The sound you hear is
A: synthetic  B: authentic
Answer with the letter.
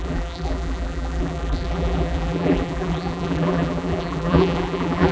A